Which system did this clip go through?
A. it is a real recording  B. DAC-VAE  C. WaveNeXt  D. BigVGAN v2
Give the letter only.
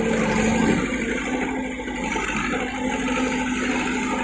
A